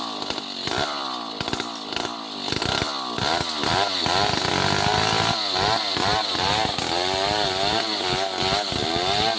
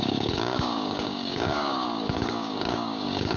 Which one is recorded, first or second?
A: first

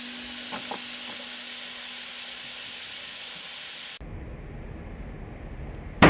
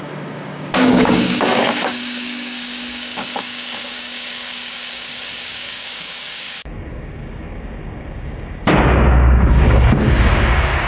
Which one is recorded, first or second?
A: first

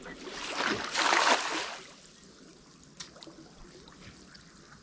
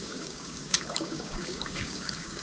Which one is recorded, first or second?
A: first